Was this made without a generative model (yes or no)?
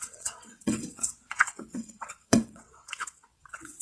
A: no